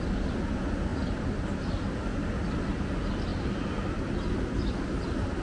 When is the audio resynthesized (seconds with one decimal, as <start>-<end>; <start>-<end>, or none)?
none